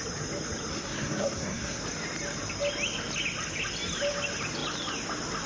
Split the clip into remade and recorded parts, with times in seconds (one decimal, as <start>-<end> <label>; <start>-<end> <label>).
0.0-0.7 recorded; 0.7-1.8 remade; 1.8-5.5 recorded